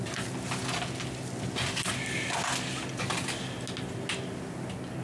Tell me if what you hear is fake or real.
real